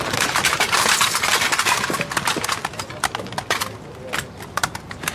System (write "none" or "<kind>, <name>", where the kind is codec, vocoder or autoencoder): none